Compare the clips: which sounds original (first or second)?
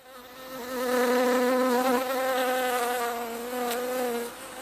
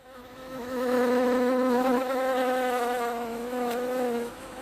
first